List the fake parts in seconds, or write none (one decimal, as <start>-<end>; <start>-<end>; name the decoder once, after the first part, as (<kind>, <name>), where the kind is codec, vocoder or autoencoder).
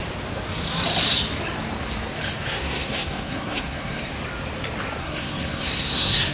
2.5-4.1 (codec, SNAC); 5.0-6.3